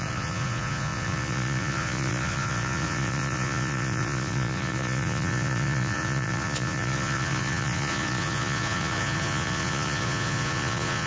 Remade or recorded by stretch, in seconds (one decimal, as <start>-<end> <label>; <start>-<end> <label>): 0.0-11.1 remade